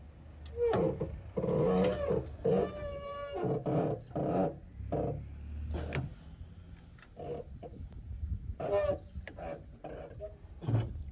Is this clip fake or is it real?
real